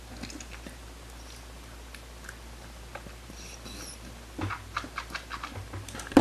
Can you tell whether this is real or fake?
real